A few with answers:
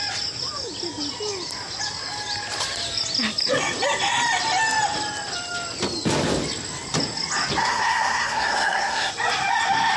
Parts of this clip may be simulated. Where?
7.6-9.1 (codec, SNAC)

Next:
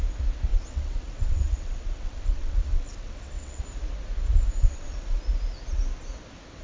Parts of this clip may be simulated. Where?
0.5-3.6 (vocoder, WaveNeXt); 4.6-5.2

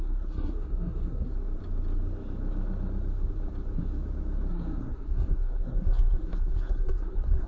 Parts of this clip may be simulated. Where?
0.0-1.3 (codec, SNAC); 4.5-7.5

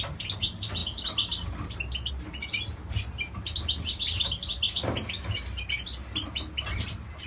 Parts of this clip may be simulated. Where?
none

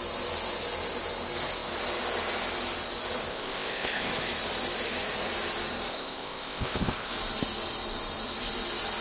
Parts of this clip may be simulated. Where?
3.3-4.1 (codec, ZipCodec); 5.9-7.1

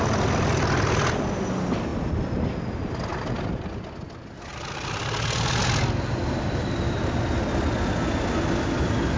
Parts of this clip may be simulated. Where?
none

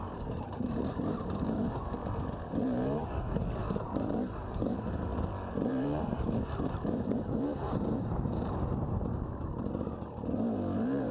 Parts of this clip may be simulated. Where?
0.0-5.1 (vocoder, BigVGAN v2); 5.7-11.1

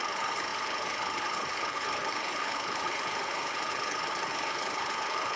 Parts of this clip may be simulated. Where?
0.0-5.4 (codec, HILCodec)